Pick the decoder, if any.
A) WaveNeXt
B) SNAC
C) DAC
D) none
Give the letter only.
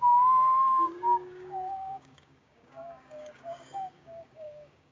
C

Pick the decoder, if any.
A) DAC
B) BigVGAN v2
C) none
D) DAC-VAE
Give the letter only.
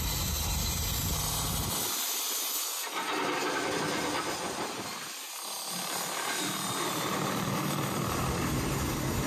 C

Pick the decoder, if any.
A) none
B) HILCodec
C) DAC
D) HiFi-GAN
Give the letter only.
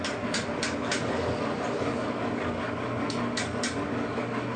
C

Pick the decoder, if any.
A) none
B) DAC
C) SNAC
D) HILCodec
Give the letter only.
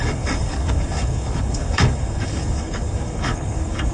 B